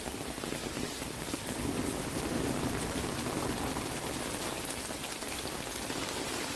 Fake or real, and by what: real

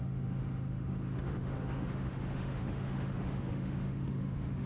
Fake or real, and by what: fake, autoencoder, DAC-VAE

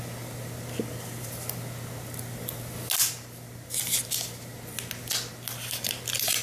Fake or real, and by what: real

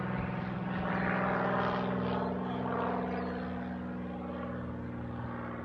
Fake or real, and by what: real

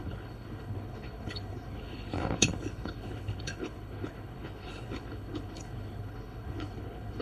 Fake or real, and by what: fake, codec, HILCodec